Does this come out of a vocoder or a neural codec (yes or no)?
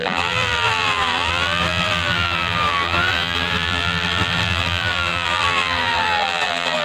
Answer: yes